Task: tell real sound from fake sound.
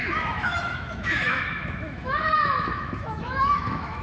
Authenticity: fake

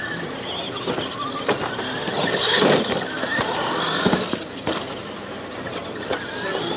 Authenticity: real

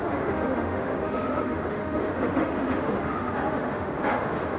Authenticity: fake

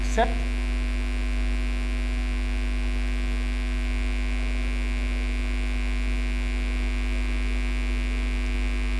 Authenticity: real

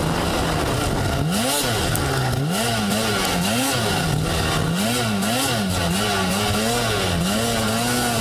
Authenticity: real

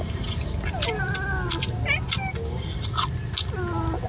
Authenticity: real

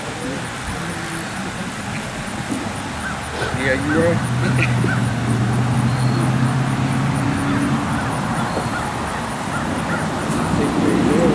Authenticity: real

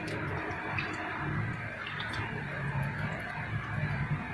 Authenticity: real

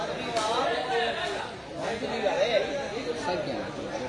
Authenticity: real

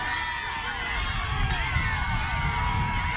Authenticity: real